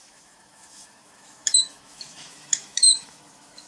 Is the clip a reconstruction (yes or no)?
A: yes